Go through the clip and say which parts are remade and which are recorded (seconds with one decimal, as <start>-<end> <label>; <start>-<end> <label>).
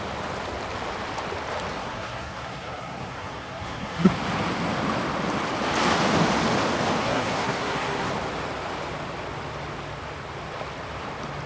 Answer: 0.0-1.7 recorded; 1.7-4.1 remade; 4.1-7.0 recorded; 7.0-8.1 remade; 8.1-11.5 recorded